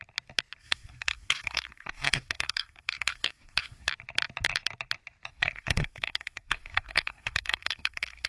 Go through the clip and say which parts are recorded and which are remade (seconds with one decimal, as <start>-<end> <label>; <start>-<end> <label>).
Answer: 0.0-0.6 recorded; 0.6-3.9 remade; 3.9-5.3 recorded; 5.3-8.3 remade